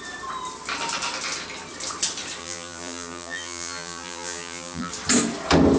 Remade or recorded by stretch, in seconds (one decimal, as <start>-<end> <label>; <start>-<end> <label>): 0.0-2.4 recorded; 2.4-4.9 remade; 4.9-5.8 recorded